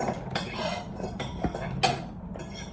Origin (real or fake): real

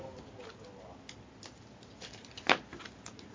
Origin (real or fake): real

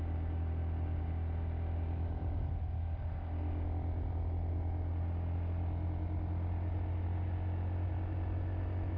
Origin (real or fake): real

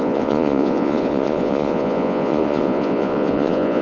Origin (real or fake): fake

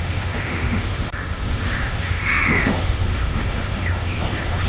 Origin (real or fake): fake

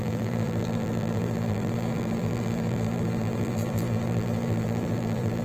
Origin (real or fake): fake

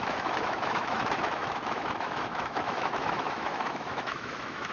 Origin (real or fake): fake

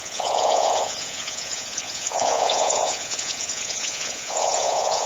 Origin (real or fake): fake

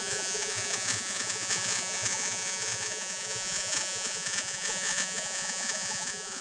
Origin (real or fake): fake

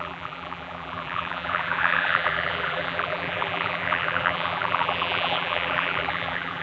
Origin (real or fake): fake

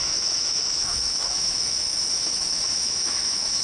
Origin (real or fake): fake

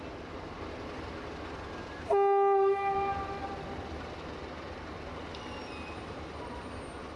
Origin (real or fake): real